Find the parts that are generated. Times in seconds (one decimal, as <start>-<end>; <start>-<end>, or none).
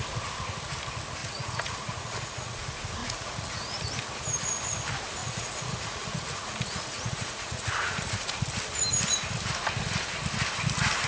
1.2-2.6; 3.0-3.8; 5.2-8.4